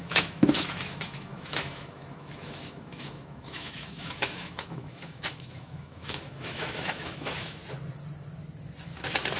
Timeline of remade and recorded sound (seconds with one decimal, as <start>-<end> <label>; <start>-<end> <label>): 0.0-7.6 remade; 7.6-9.4 recorded